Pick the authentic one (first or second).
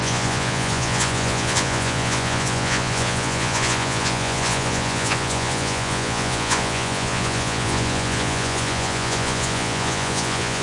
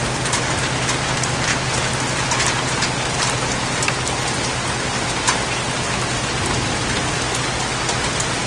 second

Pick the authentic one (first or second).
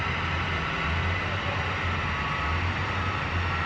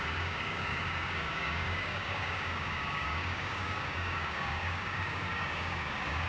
first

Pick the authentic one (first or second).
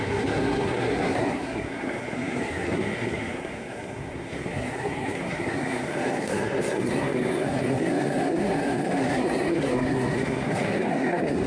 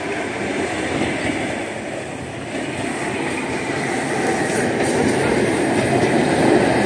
second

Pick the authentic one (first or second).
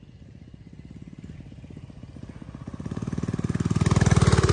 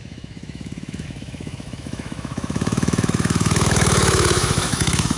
first